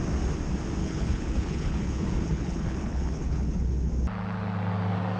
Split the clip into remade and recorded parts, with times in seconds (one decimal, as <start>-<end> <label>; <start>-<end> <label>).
0.0-0.8 recorded; 0.8-3.9 remade; 3.9-5.2 recorded